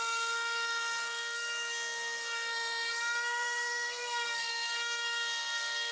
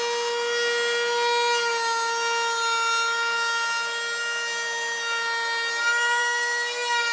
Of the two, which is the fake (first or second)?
first